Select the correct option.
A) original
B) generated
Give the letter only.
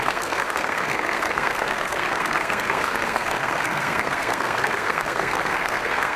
B